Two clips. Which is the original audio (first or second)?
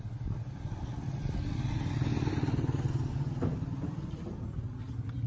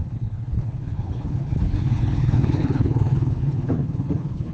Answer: first